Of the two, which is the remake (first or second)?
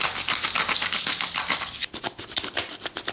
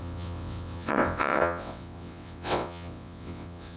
second